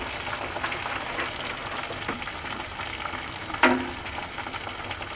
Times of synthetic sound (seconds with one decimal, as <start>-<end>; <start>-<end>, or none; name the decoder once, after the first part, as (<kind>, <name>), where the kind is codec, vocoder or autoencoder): none